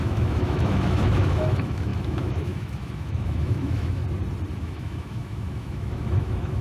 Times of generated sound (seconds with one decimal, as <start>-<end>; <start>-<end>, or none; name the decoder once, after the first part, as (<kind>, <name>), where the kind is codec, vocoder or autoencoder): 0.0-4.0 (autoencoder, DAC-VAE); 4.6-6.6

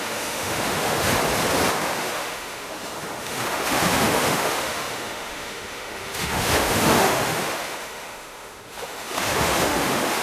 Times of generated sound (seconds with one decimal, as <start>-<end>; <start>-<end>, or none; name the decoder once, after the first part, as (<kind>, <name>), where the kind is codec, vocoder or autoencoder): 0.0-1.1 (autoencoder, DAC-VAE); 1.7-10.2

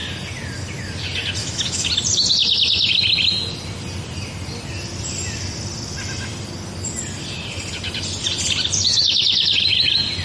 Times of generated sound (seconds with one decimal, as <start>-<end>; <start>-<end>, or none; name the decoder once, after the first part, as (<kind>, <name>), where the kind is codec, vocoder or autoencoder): 1.4-1.9 (autoencoder, DAC-VAE)